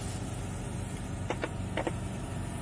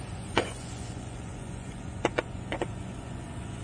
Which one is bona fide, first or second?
first